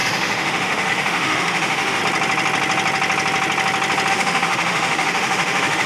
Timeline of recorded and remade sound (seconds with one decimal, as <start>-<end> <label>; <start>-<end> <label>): 0.0-2.0 remade; 2.0-4.1 recorded; 4.1-5.9 remade

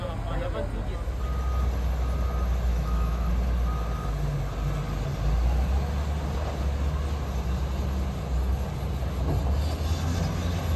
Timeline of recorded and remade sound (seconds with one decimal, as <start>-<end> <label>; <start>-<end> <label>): 0.0-2.7 recorded; 2.7-3.3 remade; 3.3-10.8 recorded

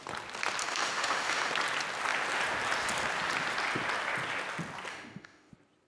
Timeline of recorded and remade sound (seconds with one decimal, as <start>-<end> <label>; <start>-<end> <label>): 0.0-0.6 recorded; 0.6-1.5 remade; 1.5-4.9 recorded; 4.9-5.5 remade; 5.5-5.9 recorded

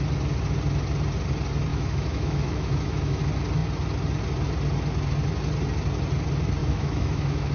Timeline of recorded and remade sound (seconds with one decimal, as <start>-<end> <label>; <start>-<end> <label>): 0.0-1.7 recorded; 1.7-3.2 remade; 3.2-6.6 recorded; 6.6-7.5 remade

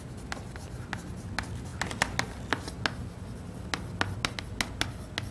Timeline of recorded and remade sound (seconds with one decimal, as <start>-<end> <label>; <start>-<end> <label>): 0.0-5.3 recorded

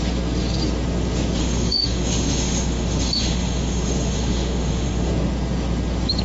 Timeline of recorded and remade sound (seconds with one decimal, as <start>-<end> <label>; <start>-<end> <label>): 0.0-1.4 recorded; 1.4-5.1 remade; 5.1-6.2 recorded

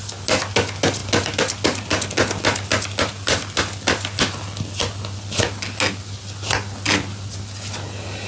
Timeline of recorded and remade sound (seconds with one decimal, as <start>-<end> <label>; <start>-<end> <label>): 0.0-8.3 recorded

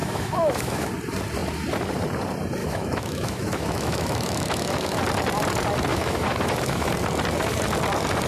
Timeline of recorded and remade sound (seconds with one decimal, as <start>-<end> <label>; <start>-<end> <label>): 0.0-0.9 remade; 0.9-2.6 recorded; 2.6-5.0 remade; 5.0-5.9 recorded; 5.9-6.9 remade; 6.9-8.3 recorded